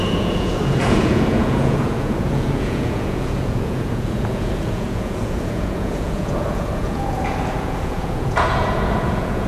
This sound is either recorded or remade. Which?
remade